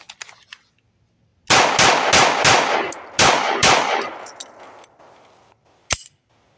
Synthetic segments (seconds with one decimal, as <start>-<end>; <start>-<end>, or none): none